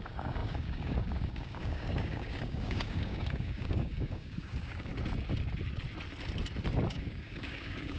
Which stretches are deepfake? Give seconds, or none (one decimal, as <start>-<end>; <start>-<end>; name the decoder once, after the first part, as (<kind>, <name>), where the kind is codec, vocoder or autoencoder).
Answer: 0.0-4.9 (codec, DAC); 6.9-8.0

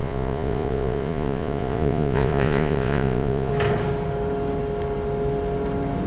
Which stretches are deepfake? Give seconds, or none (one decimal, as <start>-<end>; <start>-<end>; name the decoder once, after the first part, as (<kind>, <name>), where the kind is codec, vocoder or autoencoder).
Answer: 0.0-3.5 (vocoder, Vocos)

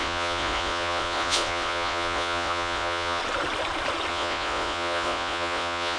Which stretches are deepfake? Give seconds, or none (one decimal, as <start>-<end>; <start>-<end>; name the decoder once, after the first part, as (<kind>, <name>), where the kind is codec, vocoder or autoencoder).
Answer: 0.0-3.2 (vocoder, Vocos); 4.1-6.0

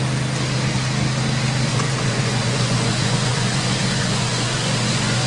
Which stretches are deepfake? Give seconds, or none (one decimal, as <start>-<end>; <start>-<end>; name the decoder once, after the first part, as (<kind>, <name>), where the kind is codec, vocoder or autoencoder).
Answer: 1.7-5.3 (vocoder, Vocos)

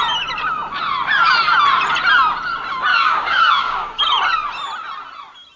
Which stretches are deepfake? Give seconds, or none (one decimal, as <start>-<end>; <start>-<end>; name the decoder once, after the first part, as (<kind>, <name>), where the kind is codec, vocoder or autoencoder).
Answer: 2.9-4.0 (codec, DAC)